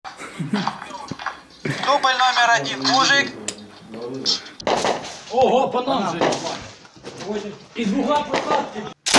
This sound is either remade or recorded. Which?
recorded